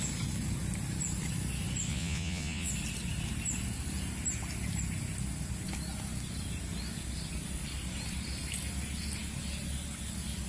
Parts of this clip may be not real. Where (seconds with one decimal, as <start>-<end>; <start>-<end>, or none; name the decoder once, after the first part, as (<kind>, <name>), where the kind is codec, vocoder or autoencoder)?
1.9-2.7 (vocoder, Vocos)